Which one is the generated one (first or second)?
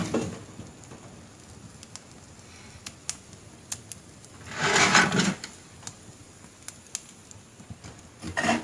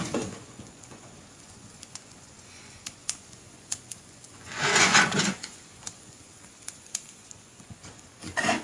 second